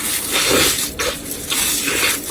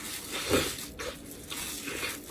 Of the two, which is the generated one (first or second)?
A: first